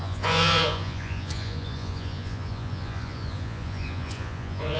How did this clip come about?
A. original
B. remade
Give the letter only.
B